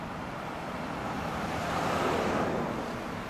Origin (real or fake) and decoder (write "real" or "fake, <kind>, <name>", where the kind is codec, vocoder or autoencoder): real